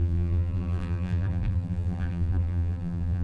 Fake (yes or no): yes